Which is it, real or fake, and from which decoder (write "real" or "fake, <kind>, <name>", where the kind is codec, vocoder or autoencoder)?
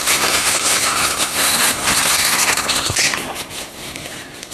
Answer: fake, codec, SNAC